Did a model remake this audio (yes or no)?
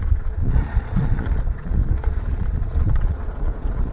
yes